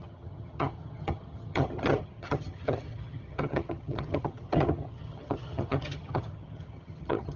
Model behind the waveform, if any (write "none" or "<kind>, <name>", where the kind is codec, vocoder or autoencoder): vocoder, HiFi-GAN